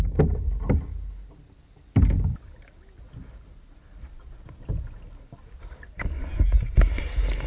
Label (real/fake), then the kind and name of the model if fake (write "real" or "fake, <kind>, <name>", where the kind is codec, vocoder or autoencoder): real